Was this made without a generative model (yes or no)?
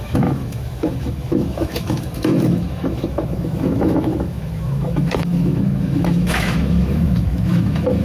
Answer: no